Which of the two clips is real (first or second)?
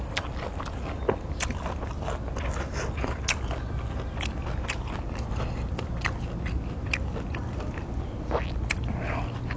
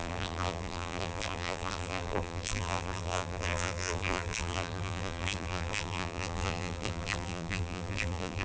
first